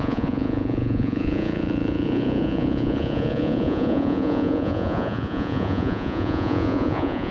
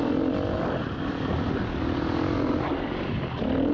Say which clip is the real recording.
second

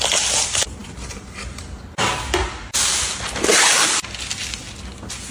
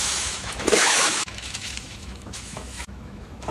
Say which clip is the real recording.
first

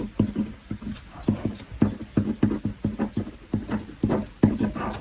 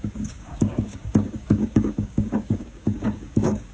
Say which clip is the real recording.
first